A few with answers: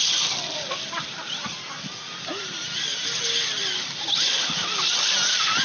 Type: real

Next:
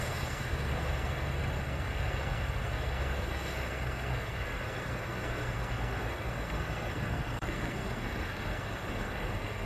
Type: fake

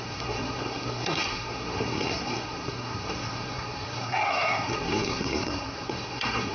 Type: fake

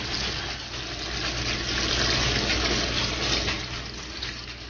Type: real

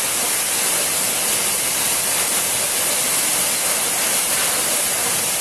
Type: real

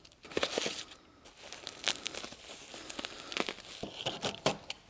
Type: real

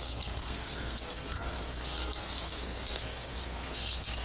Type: fake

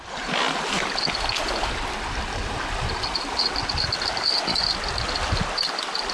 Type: real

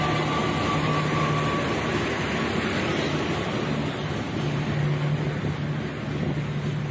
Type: real